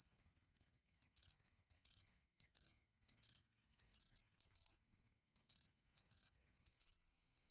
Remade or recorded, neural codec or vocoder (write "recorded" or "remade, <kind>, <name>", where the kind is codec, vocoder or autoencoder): remade, codec, SNAC